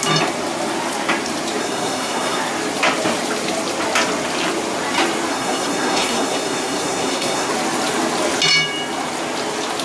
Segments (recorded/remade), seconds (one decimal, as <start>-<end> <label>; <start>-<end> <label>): 0.0-1.6 recorded; 1.6-2.4 remade; 2.4-5.3 recorded; 5.3-7.5 remade; 7.5-9.8 recorded